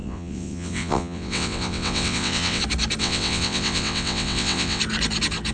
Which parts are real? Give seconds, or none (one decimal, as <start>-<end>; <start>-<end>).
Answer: 2.6-3.0; 4.8-5.5